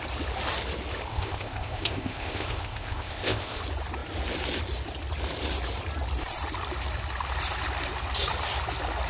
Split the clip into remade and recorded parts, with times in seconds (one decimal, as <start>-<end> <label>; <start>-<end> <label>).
0.0-1.1 recorded; 1.1-3.6 remade; 3.6-9.1 recorded

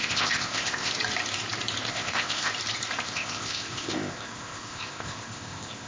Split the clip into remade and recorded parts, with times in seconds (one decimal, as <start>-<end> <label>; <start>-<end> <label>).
0.0-0.9 remade; 0.9-1.9 recorded; 1.9-2.5 remade; 2.5-3.0 recorded; 3.0-5.9 remade

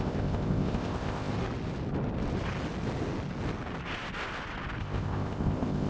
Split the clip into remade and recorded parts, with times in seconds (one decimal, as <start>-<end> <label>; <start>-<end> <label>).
0.0-1.3 remade; 1.3-4.8 recorded; 4.8-5.9 remade

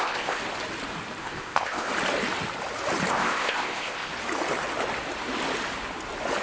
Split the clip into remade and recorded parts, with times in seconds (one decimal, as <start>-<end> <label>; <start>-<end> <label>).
0.0-0.4 remade; 0.4-1.2 recorded; 1.2-1.9 remade; 1.9-3.1 recorded; 3.1-4.1 remade; 4.1-6.4 recorded

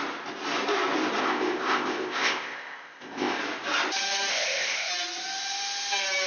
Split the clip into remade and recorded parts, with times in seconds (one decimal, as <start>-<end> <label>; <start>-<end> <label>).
0.0-1.2 recorded; 1.2-3.4 remade; 3.4-4.3 recorded; 4.3-4.9 remade; 4.9-6.3 recorded